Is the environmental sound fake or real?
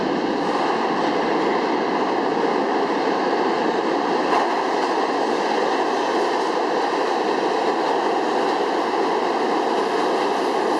real